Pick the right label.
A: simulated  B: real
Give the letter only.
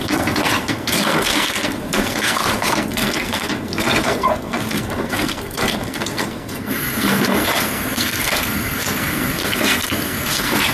A